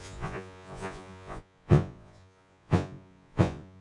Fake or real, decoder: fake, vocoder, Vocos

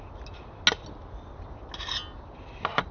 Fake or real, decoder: real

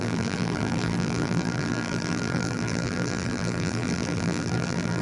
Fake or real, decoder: fake, vocoder, BigVGAN v2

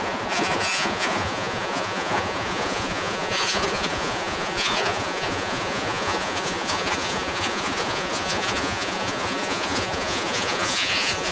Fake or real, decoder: fake, vocoder, Vocos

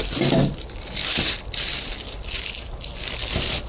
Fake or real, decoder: real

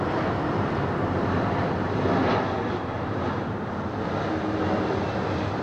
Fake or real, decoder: real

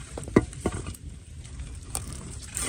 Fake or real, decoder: fake, vocoder, BigVGAN v2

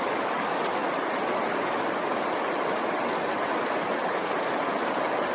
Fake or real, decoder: real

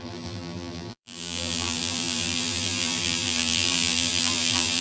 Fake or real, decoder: fake, vocoder, BigVGAN v2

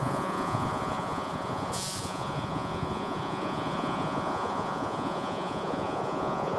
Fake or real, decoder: fake, vocoder, Vocos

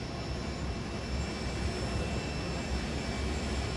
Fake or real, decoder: real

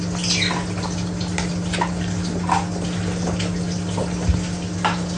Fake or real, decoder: real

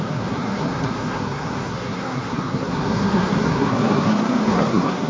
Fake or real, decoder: fake, codec, SNAC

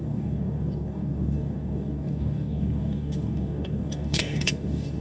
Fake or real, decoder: fake, codec, DAC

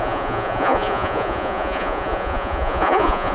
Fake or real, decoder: fake, vocoder, Vocos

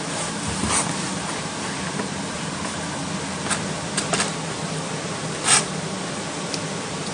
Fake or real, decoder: fake, vocoder, BigVGAN v2